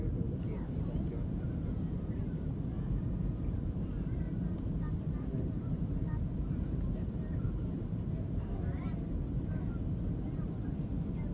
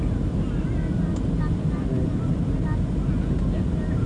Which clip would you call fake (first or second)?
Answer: first